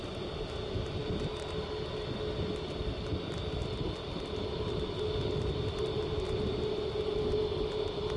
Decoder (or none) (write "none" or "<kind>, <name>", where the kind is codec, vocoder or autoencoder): none